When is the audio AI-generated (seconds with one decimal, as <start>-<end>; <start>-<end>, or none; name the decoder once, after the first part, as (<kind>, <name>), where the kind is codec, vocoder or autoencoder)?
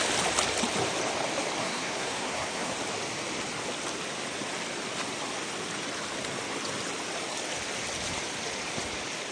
1.6-2.7 (codec, SNAC)